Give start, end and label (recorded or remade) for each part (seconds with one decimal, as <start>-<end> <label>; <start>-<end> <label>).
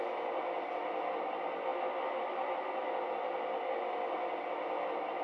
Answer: 0.0-5.2 recorded